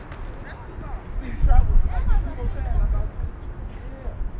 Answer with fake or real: real